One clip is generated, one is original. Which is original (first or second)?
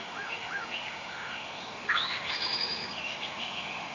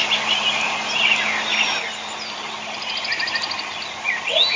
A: second